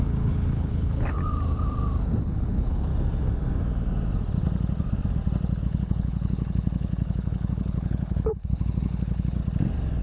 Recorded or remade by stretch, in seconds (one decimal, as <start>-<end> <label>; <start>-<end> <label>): 0.0-1.2 remade; 1.2-2.2 recorded; 2.2-2.9 remade; 2.9-5.6 recorded; 5.6-9.4 remade; 9.4-10.0 recorded